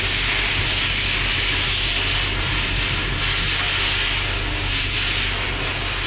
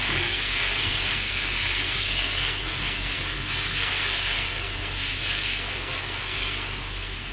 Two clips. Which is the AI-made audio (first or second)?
second